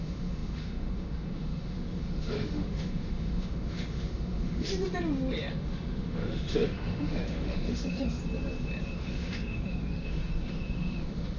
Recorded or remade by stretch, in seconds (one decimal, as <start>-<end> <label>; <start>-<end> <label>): 0.0-4.7 remade; 4.7-5.5 recorded; 5.5-8.2 remade; 8.2-8.8 recorded; 8.8-11.4 remade